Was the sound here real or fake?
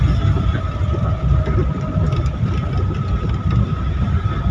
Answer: real